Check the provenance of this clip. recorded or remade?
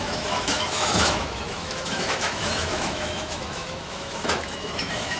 remade